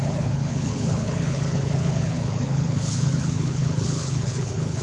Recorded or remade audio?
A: remade